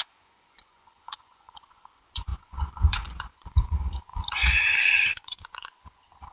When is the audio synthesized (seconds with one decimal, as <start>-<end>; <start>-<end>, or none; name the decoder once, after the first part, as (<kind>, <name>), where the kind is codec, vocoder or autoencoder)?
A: 0.0-6.3 (vocoder, Vocos)